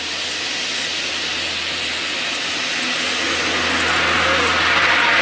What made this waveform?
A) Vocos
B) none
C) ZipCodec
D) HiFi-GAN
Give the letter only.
B